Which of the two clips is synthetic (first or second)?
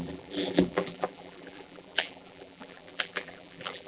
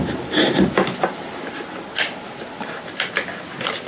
first